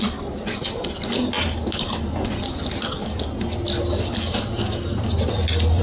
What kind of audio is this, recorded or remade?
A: recorded